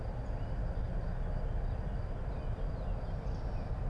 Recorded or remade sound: recorded